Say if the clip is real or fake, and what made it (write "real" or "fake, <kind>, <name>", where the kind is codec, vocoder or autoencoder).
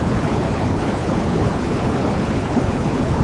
fake, codec, HILCodec